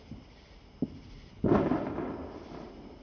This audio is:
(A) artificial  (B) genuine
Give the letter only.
B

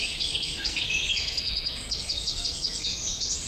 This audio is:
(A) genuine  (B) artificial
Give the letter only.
B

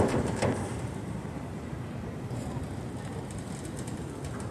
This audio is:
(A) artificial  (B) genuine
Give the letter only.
B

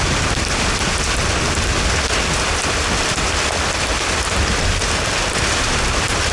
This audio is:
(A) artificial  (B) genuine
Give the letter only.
B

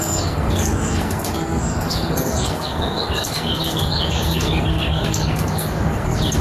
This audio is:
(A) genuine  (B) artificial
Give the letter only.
B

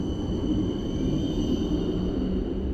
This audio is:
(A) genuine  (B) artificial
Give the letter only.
A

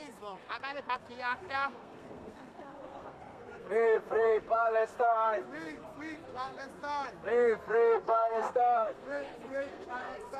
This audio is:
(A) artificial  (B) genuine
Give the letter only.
A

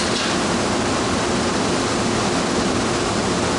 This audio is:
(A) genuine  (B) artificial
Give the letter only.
A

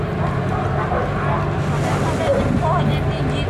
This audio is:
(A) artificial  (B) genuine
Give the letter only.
B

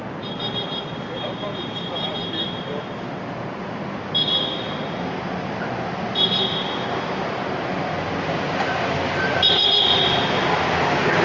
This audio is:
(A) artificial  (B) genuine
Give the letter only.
B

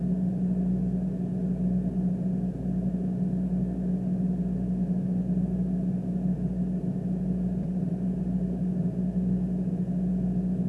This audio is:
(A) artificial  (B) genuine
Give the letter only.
B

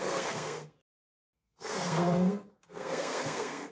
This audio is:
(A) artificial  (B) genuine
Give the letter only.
A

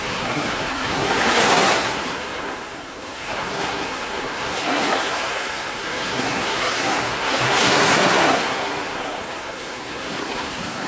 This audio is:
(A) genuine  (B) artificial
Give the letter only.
B